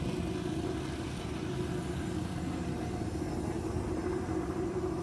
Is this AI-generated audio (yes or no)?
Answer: no